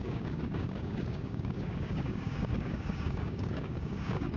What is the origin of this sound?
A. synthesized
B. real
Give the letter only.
A